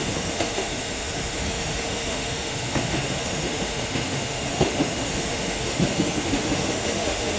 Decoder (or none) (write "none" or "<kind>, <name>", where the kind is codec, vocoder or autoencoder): autoencoder, DAC-VAE